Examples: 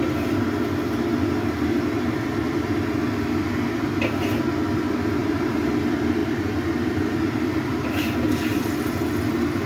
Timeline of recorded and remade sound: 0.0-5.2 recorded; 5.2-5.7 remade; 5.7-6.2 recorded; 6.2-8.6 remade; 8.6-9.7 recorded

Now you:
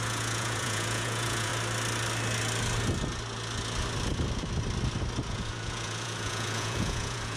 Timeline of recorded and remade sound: 0.0-1.5 remade; 1.5-5.3 recorded; 5.3-7.4 remade